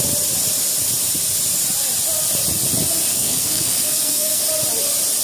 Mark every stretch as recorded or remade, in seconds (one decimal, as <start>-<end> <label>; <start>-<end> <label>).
0.0-3.1 recorded; 3.1-4.4 remade; 4.4-5.2 recorded